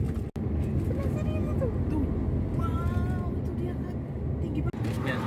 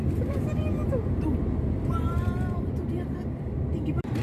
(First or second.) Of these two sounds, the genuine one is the first